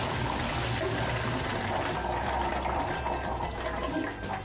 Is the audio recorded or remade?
recorded